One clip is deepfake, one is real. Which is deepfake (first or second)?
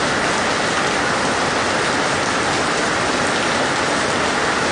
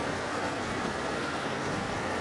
second